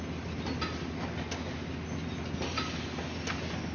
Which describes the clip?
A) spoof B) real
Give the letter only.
B